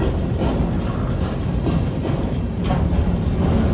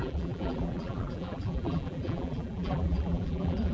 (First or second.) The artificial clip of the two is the second